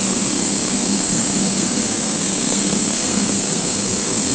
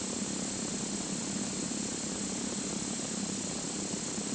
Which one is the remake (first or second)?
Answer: first